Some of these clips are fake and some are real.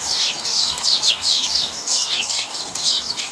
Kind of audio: fake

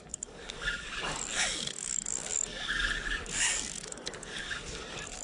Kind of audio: fake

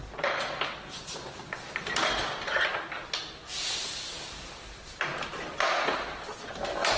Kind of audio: real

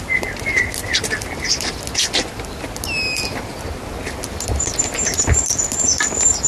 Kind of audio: real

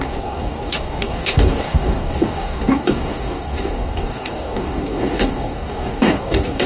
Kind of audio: fake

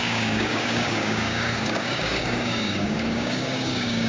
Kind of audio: fake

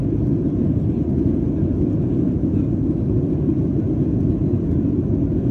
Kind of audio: real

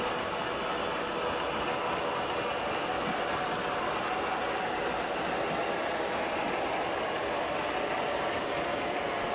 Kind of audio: real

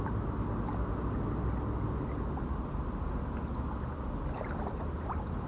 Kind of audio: real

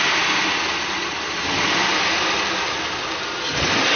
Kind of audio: real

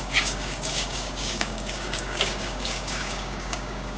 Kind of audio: fake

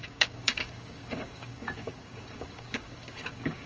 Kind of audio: fake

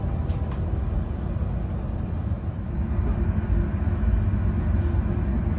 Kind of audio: real